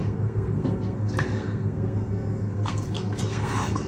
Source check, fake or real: fake